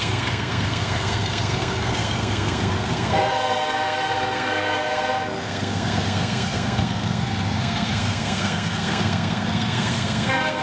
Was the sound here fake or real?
fake